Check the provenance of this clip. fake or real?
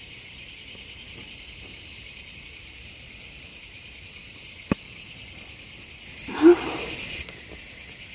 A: real